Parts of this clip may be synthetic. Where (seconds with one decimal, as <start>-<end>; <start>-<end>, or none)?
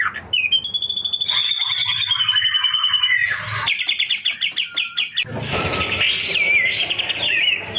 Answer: none